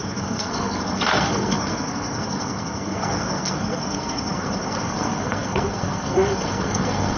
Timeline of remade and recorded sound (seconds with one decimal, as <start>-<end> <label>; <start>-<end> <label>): 0.0-7.2 remade